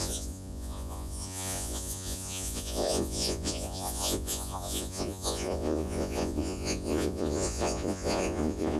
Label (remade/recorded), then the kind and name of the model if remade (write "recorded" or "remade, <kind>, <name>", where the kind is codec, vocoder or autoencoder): remade, vocoder, Vocos